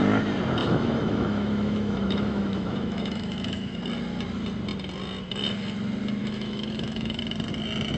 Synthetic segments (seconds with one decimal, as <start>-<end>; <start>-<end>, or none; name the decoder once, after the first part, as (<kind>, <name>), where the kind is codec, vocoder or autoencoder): 0.6-3.8 (autoencoder, DAC-VAE); 6.2-7.2

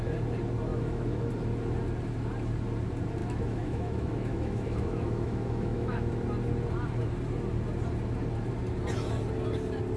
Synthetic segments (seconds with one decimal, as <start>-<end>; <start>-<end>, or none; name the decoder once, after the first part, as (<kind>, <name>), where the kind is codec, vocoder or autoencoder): 0.7-1.3 (autoencoder, DAC-VAE); 3.2-6.1

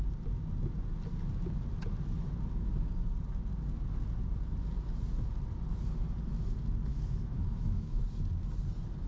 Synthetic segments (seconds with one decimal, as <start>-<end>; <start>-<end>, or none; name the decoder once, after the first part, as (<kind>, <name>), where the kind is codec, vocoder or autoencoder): 6.9-8.0 (autoencoder, DAC-VAE)

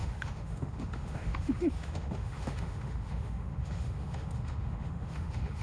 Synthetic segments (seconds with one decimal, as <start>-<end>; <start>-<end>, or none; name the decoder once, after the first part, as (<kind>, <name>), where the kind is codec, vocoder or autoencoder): 0.0-5.6 (autoencoder, DAC-VAE)

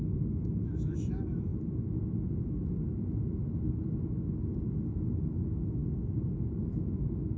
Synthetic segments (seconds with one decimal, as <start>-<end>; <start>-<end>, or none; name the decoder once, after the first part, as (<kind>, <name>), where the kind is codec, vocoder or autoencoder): 0.0-1.5 (autoencoder, DAC-VAE); 4.8-5.8; 6.6-7.4

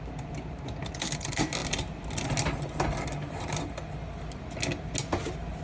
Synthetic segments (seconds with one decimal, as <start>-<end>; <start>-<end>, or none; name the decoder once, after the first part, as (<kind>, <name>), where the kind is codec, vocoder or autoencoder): none